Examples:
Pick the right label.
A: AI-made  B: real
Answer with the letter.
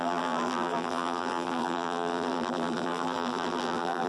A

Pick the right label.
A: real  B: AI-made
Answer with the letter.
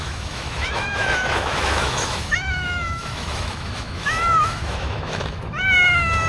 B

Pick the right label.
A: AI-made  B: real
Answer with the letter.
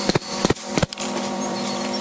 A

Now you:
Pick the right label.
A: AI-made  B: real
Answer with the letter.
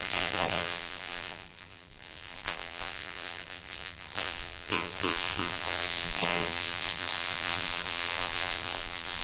A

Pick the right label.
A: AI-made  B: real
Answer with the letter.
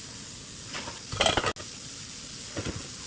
B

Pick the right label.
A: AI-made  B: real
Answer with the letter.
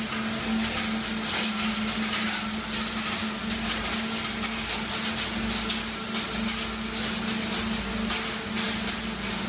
B